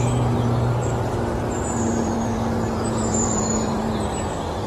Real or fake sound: fake